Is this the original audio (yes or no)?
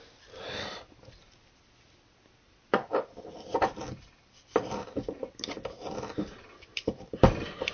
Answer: yes